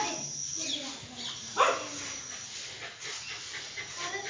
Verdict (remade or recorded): recorded